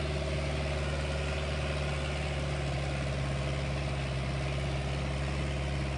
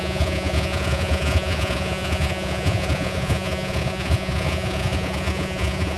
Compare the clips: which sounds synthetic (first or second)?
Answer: second